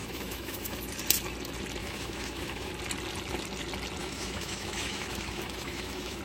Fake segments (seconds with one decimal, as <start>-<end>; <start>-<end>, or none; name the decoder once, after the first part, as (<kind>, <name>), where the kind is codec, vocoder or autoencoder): 0.0-0.8 (autoencoder, DAC-VAE); 1.8-2.7; 4.0-6.2